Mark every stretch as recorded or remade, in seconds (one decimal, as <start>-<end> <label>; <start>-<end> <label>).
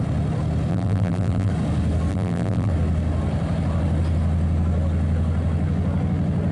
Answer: 0.0-0.7 recorded; 0.7-1.5 remade; 1.5-2.1 recorded; 2.1-2.7 remade; 2.7-6.5 recorded